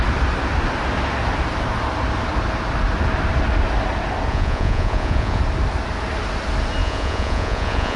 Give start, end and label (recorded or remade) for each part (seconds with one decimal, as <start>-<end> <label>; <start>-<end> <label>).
0.0-4.3 recorded; 4.3-5.4 remade; 5.4-6.8 recorded; 6.8-8.0 remade